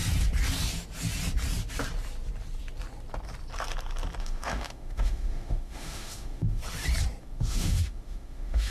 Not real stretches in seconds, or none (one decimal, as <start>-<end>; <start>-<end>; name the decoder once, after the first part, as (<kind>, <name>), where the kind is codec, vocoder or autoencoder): 4.2-6.6 (autoencoder, DAC-VAE); 7.2-8.7